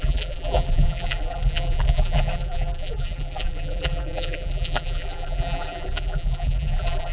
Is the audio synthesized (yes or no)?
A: yes